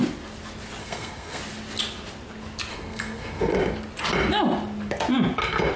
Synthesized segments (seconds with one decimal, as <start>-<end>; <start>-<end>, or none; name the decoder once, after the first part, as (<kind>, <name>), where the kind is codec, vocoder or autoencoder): 0.8-1.4 (codec, SNAC); 2.7-3.5